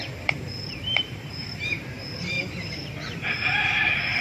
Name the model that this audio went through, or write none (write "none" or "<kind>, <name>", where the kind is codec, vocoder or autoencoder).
vocoder, BigVGAN v2